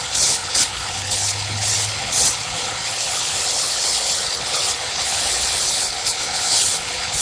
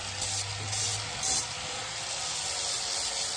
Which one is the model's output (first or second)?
first